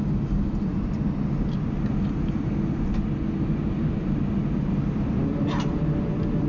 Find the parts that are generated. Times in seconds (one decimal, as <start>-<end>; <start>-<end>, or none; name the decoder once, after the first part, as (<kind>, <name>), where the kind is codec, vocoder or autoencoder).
none